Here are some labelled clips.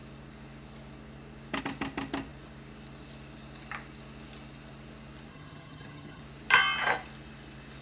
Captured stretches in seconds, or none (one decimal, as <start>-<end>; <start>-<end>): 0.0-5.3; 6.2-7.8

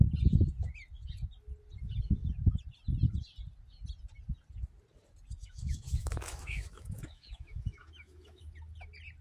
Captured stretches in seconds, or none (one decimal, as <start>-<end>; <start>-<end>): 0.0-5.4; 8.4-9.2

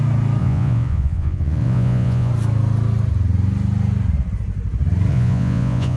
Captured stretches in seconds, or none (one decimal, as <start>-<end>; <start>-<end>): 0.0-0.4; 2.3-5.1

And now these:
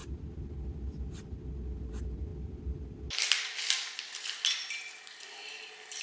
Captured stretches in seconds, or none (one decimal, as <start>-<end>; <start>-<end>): 0.0-1.8; 2.3-6.0

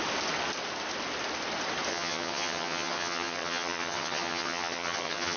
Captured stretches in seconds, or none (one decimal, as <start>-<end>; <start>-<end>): 0.0-1.9